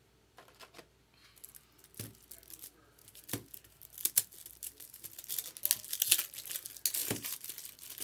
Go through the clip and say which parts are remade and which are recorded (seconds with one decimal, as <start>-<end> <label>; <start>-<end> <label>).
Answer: 0.0-7.0 recorded; 7.0-7.5 remade; 7.5-8.0 recorded